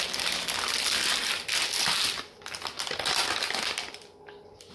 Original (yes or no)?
yes